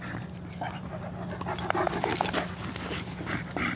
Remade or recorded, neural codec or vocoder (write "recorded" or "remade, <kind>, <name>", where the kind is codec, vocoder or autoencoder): recorded